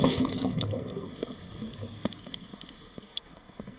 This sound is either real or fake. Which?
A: fake